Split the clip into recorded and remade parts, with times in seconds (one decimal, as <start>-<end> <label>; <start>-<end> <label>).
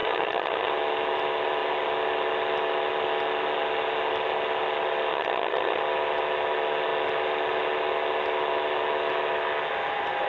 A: 0.0-0.7 remade; 0.7-5.1 recorded; 5.1-5.8 remade; 5.8-10.3 recorded